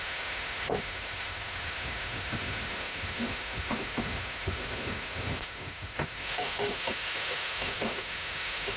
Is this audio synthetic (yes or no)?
yes